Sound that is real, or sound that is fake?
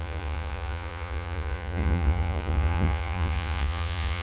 fake